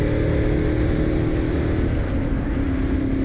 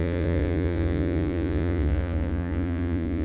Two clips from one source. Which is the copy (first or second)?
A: second